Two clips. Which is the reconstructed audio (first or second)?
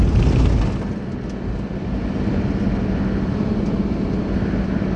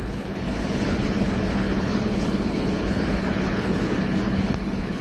second